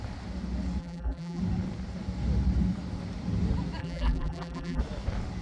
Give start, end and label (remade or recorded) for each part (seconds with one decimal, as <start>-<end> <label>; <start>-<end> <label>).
0.0-0.8 recorded; 0.8-1.4 remade; 1.4-3.8 recorded; 3.8-4.8 remade; 4.8-5.4 recorded